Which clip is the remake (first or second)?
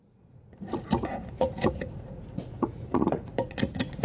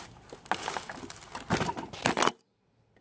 first